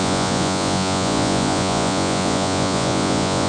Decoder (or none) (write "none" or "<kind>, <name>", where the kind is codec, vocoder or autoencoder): vocoder, Vocos